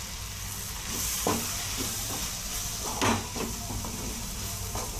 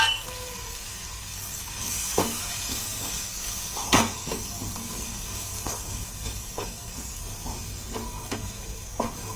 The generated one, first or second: second